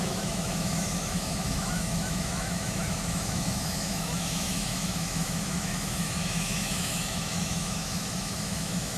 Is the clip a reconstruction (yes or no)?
yes